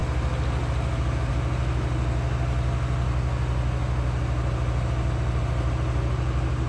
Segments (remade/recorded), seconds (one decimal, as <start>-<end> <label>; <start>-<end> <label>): 0.0-6.7 recorded